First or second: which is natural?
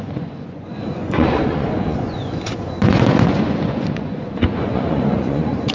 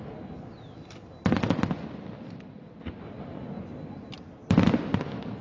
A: second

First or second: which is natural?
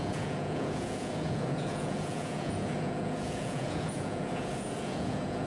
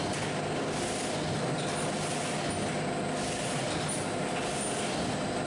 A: second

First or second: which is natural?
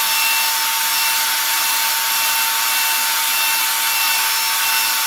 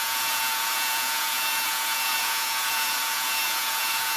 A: first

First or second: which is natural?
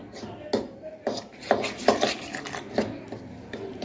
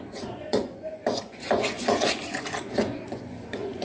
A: first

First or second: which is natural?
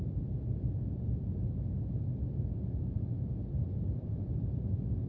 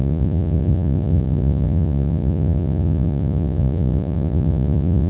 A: first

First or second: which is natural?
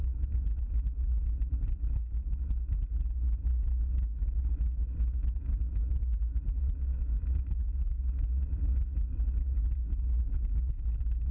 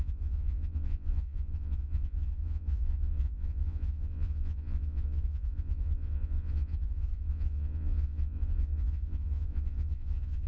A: first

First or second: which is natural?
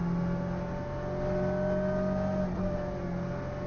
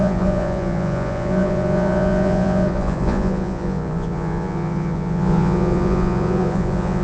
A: first